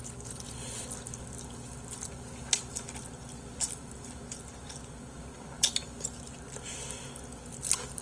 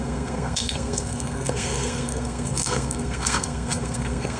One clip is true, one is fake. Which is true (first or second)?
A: first